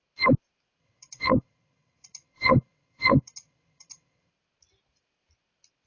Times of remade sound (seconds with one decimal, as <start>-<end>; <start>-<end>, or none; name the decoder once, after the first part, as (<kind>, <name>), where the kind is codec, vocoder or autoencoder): 0.8-4.3 (vocoder, WaveNeXt)